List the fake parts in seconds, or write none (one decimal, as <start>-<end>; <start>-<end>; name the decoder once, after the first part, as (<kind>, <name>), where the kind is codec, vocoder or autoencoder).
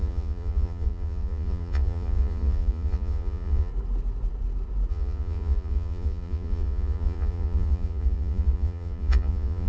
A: 0.0-3.7 (vocoder, Vocos); 4.9-9.7